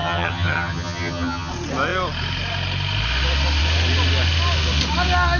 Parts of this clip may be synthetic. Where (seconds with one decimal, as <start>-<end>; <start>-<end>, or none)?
0.0-1.5